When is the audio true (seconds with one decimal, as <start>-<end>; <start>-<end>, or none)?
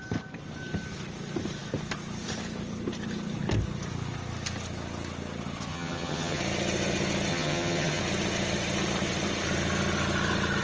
0.0-5.7; 6.4-7.3; 8.0-10.6